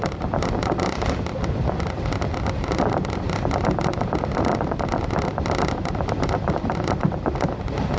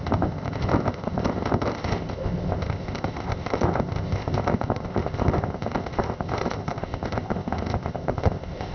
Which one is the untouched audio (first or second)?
first